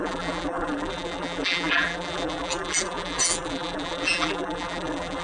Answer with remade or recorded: remade